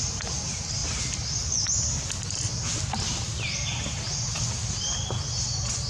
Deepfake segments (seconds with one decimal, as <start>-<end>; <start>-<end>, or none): none